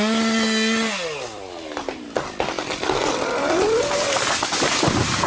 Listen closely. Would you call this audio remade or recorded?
recorded